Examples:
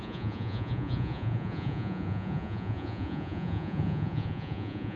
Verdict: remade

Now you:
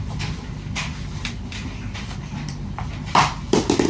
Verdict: remade